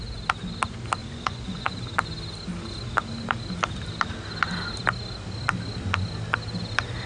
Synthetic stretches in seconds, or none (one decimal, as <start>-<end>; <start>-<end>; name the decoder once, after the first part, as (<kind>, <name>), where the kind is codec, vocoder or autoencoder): 1.0-1.7 (vocoder, Vocos)